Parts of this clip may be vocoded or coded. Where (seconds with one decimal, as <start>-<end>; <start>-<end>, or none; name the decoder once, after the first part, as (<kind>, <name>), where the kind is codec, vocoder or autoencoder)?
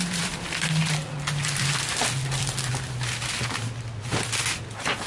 none